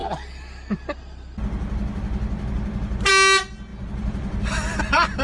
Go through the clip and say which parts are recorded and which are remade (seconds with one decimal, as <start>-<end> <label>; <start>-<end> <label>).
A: 0.0-5.2 recorded